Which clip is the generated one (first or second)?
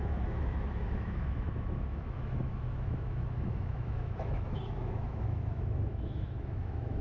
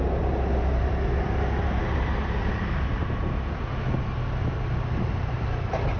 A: first